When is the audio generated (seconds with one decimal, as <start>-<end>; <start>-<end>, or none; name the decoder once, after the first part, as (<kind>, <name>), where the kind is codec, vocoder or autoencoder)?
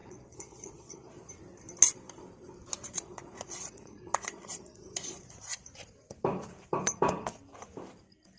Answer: 0.0-1.3 (vocoder, Vocos); 2.8-5.7